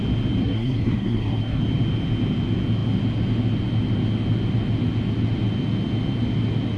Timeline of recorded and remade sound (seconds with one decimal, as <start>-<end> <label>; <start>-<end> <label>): 0.0-0.4 recorded; 0.4-1.6 remade; 1.6-6.8 recorded